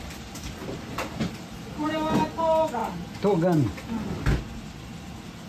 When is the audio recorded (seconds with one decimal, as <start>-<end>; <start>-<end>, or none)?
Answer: 0.0-0.6; 1.9-5.5